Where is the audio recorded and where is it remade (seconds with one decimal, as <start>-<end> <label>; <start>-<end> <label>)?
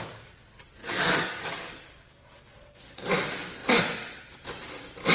0.0-0.8 recorded; 0.8-3.1 remade; 3.1-5.1 recorded